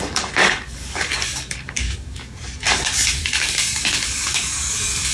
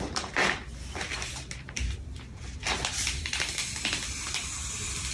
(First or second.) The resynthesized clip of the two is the first